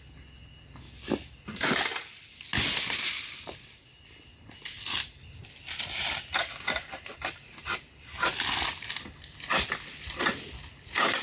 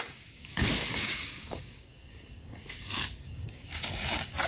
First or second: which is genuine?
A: first